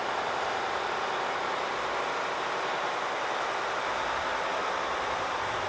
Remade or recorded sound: recorded